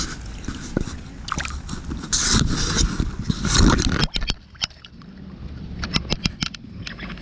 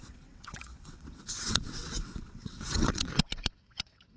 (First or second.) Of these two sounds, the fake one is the second